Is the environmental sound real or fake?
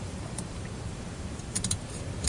fake